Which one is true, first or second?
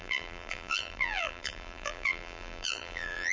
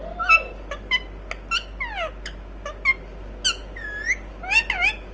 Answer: second